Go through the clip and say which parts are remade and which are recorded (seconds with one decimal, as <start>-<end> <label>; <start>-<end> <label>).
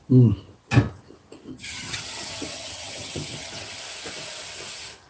0.0-1.5 recorded; 1.5-3.8 remade; 3.8-5.1 recorded